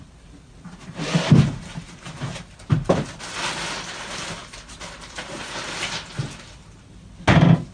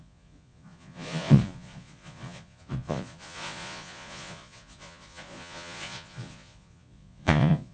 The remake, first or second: second